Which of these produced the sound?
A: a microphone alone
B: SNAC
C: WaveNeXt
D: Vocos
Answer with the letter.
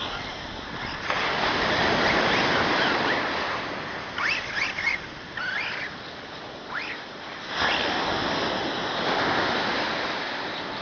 A